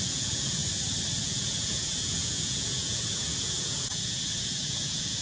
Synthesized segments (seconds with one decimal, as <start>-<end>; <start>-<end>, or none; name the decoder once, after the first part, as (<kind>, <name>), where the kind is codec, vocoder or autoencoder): 0.0-0.6 (vocoder, Vocos); 1.2-5.2